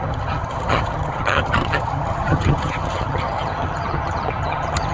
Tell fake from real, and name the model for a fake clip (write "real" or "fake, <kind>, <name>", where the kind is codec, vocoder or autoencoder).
fake, vocoder, HiFi-GAN